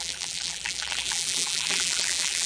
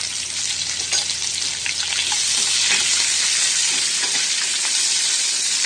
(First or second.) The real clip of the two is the second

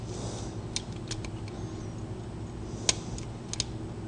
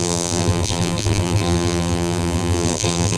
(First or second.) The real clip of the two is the first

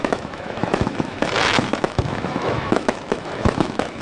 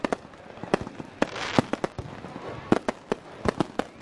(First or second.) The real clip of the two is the second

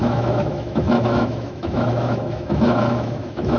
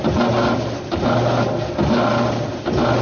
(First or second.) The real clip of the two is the second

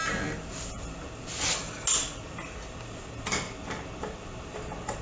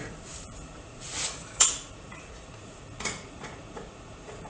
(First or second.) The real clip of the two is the first